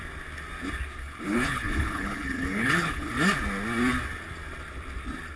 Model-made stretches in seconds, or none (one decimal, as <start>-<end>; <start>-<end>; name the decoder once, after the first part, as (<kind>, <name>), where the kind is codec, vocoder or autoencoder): 1.0-3.1 (codec, HILCodec)